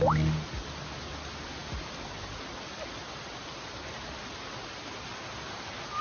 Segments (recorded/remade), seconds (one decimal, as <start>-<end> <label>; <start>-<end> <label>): 0.0-6.0 recorded